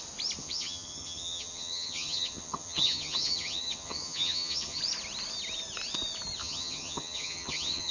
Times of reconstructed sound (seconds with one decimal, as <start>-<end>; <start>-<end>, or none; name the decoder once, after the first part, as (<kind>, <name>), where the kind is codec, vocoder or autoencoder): 0.4-4.8 (vocoder, HiFi-GAN); 6.4-7.9